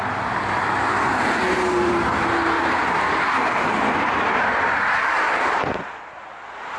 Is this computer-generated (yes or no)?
no